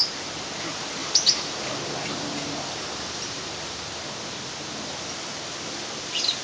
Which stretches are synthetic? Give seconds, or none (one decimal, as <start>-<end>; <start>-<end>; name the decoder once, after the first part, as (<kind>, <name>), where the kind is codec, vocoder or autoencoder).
1.0-3.4 (vocoder, BigVGAN v2)